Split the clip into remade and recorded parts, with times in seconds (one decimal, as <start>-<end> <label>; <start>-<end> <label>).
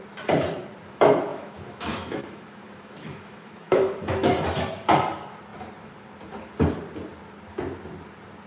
0.0-1.3 recorded; 1.3-4.3 remade; 4.3-8.5 recorded